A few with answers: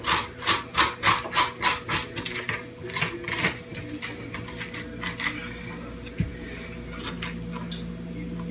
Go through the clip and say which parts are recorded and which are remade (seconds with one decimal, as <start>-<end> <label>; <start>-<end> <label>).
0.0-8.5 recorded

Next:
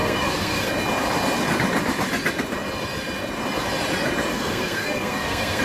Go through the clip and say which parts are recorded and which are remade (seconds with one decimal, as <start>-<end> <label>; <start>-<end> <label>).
0.0-0.7 remade; 0.7-4.3 recorded; 4.3-5.6 remade

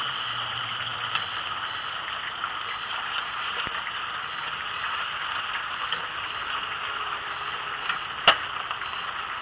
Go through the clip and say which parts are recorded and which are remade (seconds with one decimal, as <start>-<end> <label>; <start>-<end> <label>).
0.0-9.4 recorded

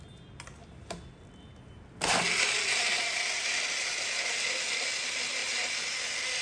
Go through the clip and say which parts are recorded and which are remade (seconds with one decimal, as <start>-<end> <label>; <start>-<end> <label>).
0.0-6.4 recorded

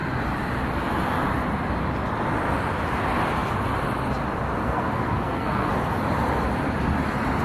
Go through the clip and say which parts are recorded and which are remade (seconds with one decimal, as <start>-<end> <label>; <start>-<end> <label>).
0.0-4.6 recorded; 4.6-5.7 remade; 5.7-7.4 recorded

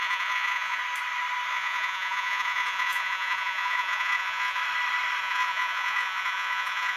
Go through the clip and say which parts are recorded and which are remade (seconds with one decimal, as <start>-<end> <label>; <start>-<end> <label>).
0.0-0.8 remade; 0.8-1.5 recorded; 1.5-4.6 remade; 4.6-5.2 recorded; 5.2-7.0 remade

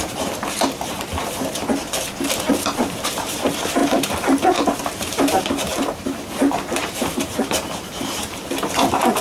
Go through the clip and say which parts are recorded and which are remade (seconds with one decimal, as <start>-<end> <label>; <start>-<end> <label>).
0.0-1.6 remade; 1.6-3.0 recorded; 3.0-9.2 remade